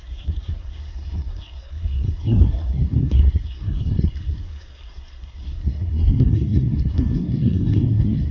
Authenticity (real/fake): fake